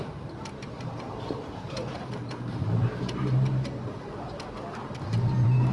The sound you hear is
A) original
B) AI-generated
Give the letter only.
B